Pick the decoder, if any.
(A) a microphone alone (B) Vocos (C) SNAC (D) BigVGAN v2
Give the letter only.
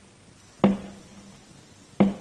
A